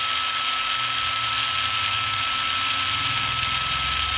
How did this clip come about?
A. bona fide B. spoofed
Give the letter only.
A